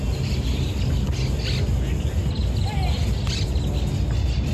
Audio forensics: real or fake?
real